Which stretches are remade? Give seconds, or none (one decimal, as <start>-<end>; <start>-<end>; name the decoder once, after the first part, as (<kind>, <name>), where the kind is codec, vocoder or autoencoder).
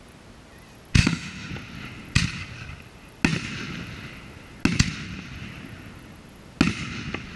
1.0-1.5 (autoencoder, DAC-VAE)